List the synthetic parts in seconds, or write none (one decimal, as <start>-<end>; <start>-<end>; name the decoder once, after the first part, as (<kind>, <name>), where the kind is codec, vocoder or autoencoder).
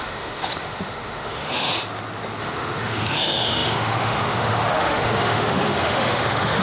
0.0-1.7 (autoencoder, DAC-VAE); 2.4-6.6